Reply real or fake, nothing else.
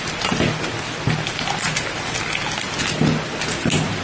real